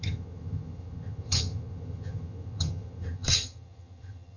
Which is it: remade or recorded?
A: remade